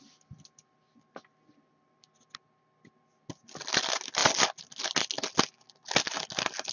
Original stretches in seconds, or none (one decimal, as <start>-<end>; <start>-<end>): 0.0-6.7